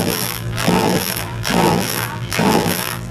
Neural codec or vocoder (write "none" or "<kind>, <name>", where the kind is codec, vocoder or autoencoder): vocoder, BigVGAN v2